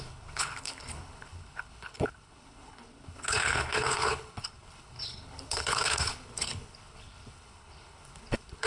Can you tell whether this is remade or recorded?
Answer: remade